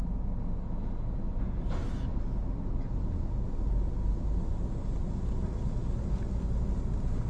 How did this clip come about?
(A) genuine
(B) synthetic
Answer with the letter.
A